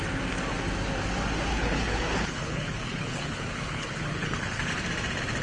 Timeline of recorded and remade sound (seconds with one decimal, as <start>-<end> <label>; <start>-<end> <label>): 0.0-1.5 recorded; 1.5-4.7 remade; 4.7-5.4 recorded